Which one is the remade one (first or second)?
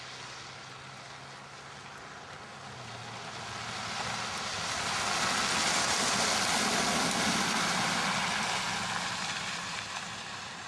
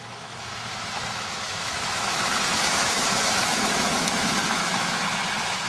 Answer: second